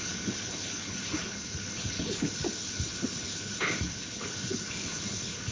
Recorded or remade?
remade